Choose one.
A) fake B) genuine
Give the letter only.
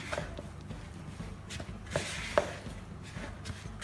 B